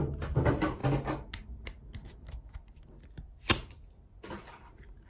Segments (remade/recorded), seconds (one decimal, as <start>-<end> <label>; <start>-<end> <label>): 0.0-5.1 recorded